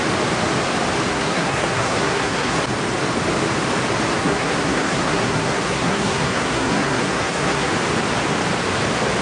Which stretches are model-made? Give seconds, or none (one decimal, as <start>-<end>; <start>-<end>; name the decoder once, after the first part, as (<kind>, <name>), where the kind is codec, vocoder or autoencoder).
1.1-2.6 (codec, SNAC); 4.2-7.7